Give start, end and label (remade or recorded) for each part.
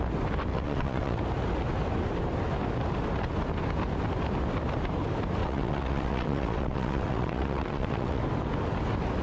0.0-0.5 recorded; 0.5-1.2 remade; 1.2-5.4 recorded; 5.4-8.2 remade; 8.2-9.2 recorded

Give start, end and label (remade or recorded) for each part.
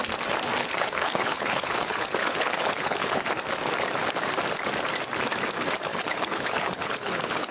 0.0-0.6 recorded; 0.6-3.3 remade; 3.3-5.9 recorded; 5.9-7.5 remade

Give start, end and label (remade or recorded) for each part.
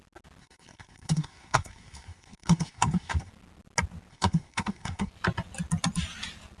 0.0-0.4 recorded; 0.4-3.3 remade; 3.3-4.1 recorded; 4.1-5.1 remade; 5.1-6.6 recorded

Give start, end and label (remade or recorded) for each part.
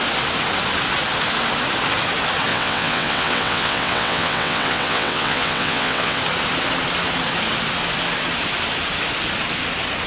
0.0-2.5 recorded; 2.5-6.2 remade; 6.2-10.1 recorded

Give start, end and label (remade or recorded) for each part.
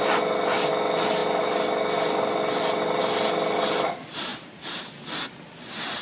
0.0-6.0 recorded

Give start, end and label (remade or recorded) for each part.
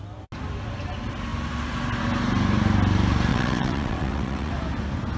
0.0-3.3 recorded; 3.3-4.5 remade; 4.5-5.2 recorded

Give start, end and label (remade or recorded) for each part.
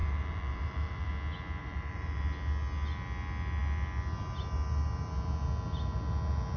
0.0-1.1 remade; 1.1-1.6 recorded; 1.6-2.2 remade; 2.2-6.6 recorded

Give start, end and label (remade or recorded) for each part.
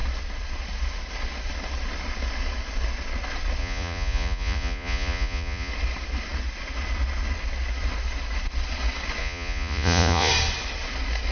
0.0-3.6 recorded; 3.6-5.7 remade; 5.7-9.2 recorded; 9.2-10.3 remade; 10.3-11.3 recorded